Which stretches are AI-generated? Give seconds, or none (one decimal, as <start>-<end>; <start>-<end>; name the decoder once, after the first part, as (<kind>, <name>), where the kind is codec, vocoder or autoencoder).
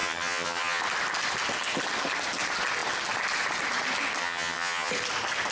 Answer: 0.0-0.8 (vocoder, HiFi-GAN); 4.2-4.9